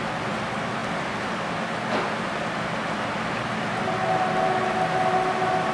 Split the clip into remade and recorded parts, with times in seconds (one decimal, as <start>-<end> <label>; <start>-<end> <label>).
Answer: 0.0-5.7 recorded